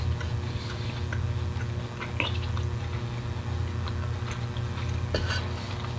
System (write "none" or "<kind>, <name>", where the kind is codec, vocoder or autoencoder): none